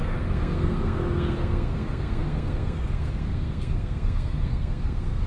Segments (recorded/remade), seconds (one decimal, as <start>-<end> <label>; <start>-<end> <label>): 0.0-5.3 remade